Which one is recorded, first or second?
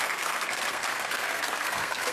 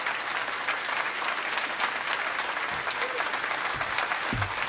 second